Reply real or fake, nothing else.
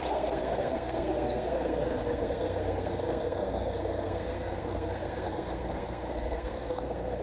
fake